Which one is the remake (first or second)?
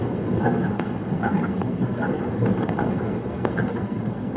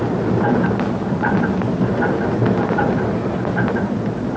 first